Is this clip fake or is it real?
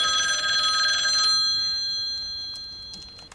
real